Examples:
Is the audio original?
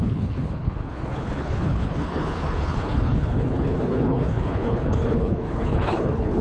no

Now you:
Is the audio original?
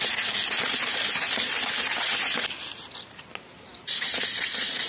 yes